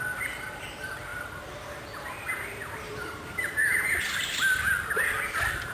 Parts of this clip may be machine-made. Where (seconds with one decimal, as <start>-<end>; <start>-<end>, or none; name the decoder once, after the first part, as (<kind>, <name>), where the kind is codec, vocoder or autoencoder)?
1.1-4.0 (vocoder, BigVGAN v2)

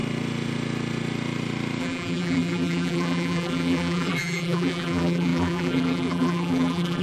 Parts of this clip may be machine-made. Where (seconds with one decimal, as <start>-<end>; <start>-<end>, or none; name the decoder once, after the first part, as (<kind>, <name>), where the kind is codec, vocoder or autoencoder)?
1.8-7.0 (vocoder, BigVGAN v2)